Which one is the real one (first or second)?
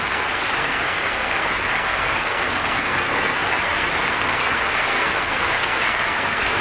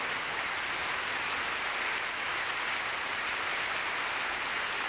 second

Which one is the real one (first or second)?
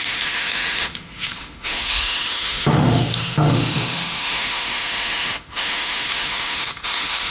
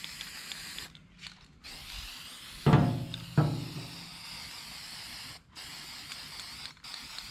second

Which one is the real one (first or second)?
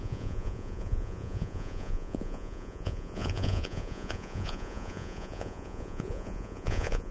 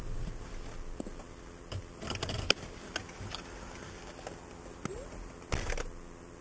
second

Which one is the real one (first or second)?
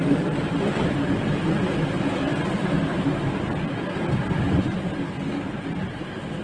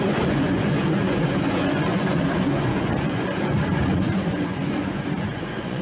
first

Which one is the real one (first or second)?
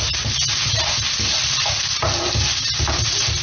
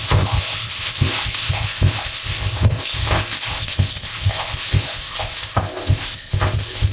first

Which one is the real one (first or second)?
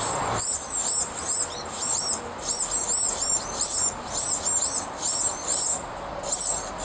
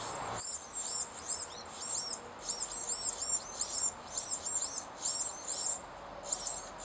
second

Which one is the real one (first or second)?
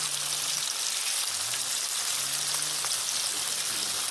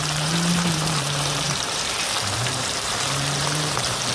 first